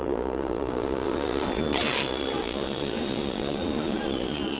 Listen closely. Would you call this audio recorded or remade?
remade